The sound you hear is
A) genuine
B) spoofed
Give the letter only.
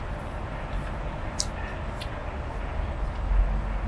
A